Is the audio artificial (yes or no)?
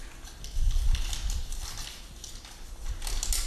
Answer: no